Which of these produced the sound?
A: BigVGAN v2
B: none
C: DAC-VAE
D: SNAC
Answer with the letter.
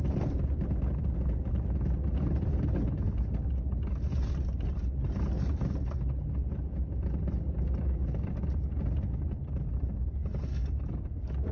B